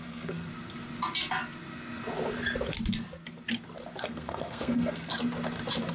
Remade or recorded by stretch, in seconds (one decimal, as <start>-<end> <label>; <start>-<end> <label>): 0.0-0.5 remade; 0.5-4.0 recorded; 4.0-5.1 remade; 5.1-5.9 recorded